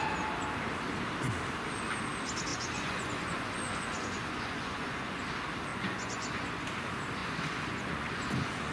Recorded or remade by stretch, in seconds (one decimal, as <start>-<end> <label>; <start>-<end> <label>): 0.0-2.5 recorded; 2.5-5.2 remade; 5.2-5.7 recorded; 5.7-6.7 remade; 6.7-7.2 recorded; 7.2-8.7 remade